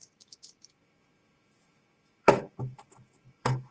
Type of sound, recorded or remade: remade